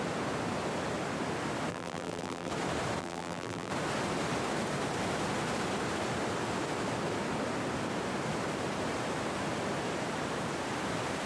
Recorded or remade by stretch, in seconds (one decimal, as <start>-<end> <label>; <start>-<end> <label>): 0.0-1.7 recorded; 1.7-2.5 remade; 2.5-3.0 recorded; 3.0-3.7 remade; 3.7-11.3 recorded